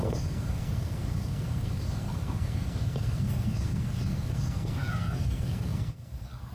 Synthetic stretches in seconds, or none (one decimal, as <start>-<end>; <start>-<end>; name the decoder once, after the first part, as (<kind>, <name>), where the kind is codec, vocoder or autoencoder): 0.0-6.5 (codec, SNAC)